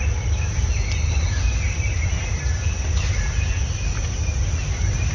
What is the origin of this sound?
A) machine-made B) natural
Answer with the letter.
B